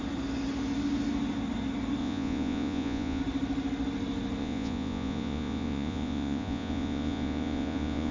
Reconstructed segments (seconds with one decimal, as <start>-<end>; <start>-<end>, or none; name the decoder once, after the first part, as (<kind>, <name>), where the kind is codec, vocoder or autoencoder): 2.0-3.2 (vocoder, Vocos); 4.4-8.1